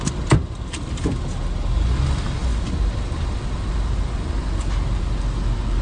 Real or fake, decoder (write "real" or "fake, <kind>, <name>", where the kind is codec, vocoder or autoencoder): real